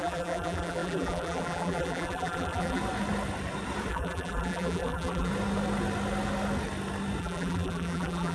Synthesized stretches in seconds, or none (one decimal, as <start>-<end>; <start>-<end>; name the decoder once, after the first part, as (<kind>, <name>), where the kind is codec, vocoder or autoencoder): 0.0-2.8 (vocoder, BigVGAN v2); 3.9-5.3; 7.2-8.3